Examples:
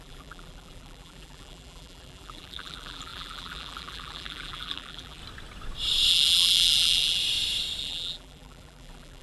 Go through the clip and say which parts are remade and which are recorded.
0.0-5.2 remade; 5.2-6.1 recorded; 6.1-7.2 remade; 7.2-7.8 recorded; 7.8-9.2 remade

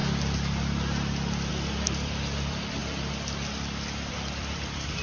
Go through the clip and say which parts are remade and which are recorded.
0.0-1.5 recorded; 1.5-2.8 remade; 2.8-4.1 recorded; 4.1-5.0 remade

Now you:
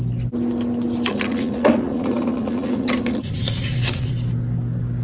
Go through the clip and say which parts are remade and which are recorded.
0.0-1.1 recorded; 1.1-4.1 remade; 4.1-5.0 recorded

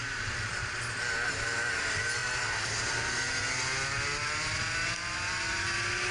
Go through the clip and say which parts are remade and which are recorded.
0.0-6.1 recorded

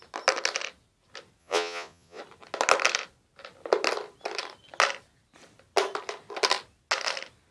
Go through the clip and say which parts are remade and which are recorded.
0.0-1.4 recorded; 1.4-2.2 remade; 2.2-7.5 recorded

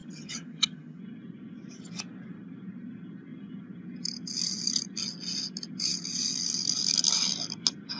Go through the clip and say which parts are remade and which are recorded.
0.0-1.0 remade; 1.0-8.0 recorded

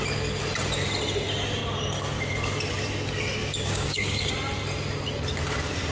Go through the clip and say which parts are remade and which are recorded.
0.0-3.4 recorded; 3.4-4.3 remade; 4.3-5.9 recorded

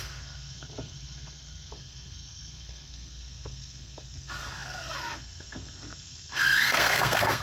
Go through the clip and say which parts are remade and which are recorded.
0.0-7.4 remade